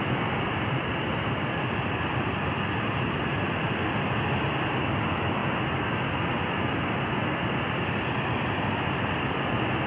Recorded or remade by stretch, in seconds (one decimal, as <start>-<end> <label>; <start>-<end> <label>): 0.0-9.9 recorded